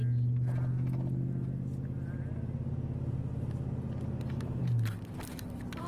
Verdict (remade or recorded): recorded